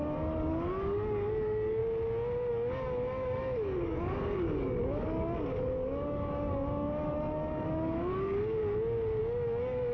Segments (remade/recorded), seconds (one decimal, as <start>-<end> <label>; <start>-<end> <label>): 0.0-1.8 remade; 1.8-2.5 recorded; 2.5-8.6 remade; 8.6-9.2 recorded; 9.2-9.9 remade